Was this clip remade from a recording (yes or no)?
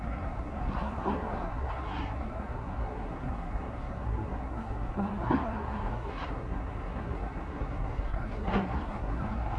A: yes